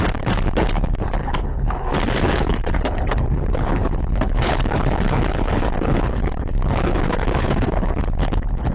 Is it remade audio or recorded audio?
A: remade